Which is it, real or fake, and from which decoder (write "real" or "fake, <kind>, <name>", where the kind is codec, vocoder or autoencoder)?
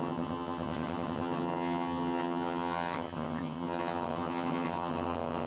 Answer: fake, vocoder, HiFi-GAN